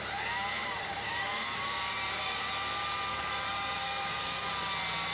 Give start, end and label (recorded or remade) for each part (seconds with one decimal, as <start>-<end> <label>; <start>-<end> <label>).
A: 0.0-0.6 recorded; 0.6-2.5 remade; 2.5-3.1 recorded; 3.1-4.5 remade; 4.5-5.1 recorded